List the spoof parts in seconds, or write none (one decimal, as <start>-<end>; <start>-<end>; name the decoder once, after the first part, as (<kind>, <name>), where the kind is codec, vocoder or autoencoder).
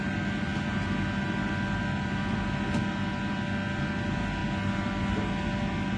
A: none